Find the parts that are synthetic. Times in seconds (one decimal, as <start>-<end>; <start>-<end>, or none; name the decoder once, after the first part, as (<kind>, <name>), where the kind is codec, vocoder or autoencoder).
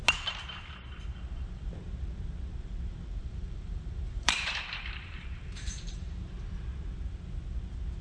1.1-1.7 (vocoder, BigVGAN v2); 3.2-6.2